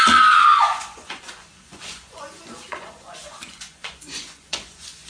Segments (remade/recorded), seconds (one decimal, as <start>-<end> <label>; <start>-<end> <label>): 0.0-5.1 remade